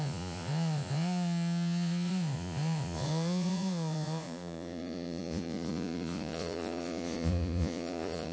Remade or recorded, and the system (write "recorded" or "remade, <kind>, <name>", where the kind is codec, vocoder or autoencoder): remade, vocoder, Vocos